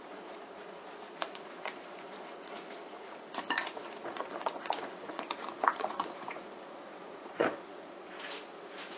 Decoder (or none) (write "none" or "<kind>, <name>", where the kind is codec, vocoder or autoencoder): vocoder, Vocos